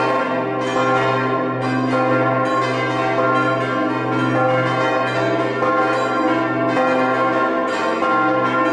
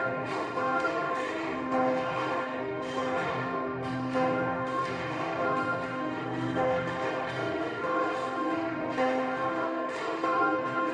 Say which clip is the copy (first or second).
second